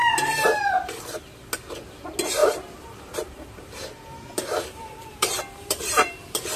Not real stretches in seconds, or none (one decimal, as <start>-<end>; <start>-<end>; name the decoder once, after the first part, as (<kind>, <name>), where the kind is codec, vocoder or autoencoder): 2.4-6.6 (vocoder, BigVGAN v2)